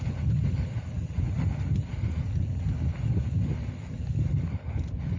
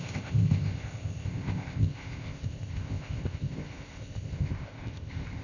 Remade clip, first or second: second